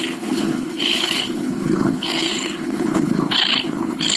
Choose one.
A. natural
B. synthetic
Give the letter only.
B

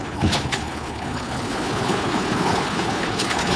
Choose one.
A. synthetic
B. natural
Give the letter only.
A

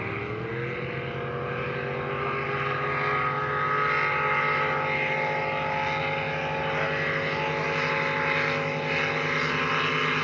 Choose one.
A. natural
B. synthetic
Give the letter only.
A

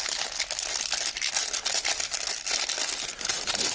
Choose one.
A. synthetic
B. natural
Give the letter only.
B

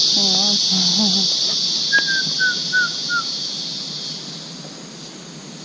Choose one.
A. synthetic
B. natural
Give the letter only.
B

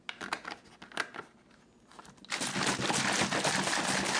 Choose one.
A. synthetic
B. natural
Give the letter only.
B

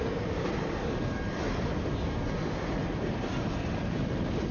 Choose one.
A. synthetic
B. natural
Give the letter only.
B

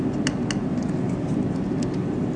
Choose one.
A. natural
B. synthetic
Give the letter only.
A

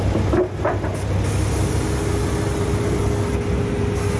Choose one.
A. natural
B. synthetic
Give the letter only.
A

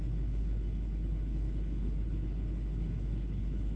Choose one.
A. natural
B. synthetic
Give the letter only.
B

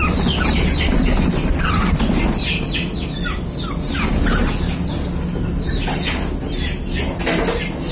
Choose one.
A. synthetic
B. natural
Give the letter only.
B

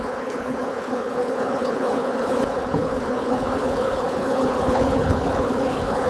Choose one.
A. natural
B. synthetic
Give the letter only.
B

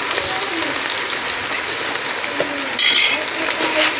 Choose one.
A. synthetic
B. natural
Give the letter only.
B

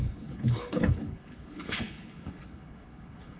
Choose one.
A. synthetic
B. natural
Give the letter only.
A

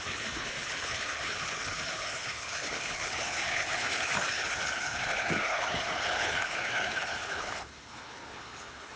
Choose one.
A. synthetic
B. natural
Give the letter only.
A